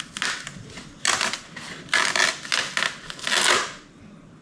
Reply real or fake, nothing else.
real